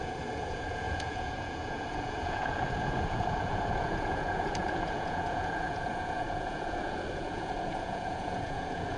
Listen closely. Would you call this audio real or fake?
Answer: fake